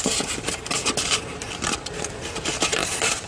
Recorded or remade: remade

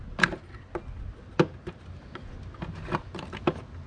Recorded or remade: recorded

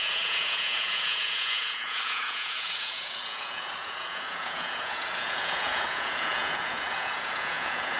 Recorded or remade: remade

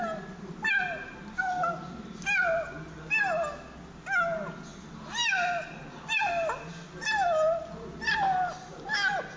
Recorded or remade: recorded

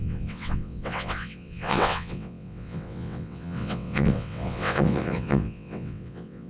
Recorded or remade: remade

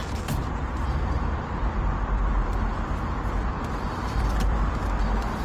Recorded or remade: remade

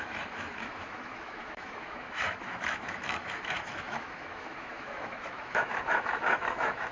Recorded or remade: remade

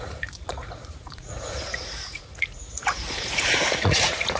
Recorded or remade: remade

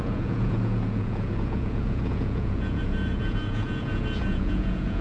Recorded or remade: remade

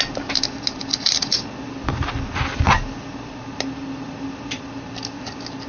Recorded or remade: recorded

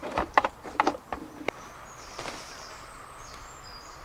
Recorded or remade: remade